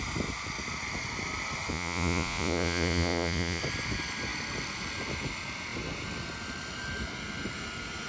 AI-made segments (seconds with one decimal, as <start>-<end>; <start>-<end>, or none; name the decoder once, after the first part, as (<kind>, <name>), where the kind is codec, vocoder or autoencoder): 1.7-3.6 (vocoder, Vocos)